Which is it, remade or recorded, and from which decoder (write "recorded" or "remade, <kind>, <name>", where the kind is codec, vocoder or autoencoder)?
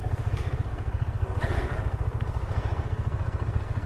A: remade, codec, SNAC